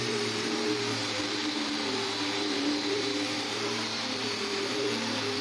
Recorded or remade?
remade